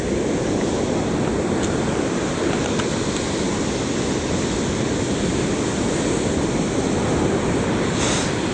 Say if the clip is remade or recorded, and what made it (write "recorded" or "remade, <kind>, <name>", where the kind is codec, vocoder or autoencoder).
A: recorded